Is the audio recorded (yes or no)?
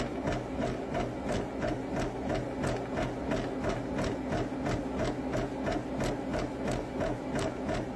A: yes